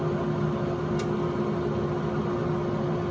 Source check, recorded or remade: recorded